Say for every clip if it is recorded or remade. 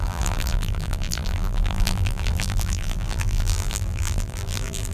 remade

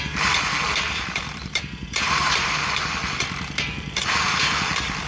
remade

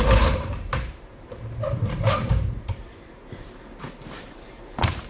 remade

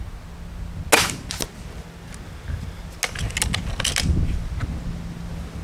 recorded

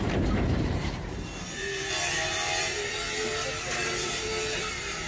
remade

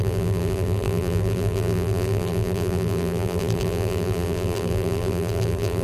remade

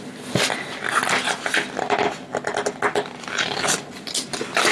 recorded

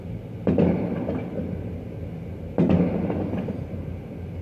recorded